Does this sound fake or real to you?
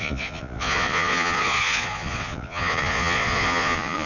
fake